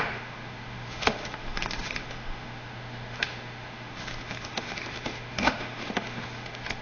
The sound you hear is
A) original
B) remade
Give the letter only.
B